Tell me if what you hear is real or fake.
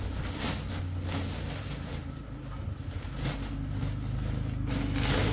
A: real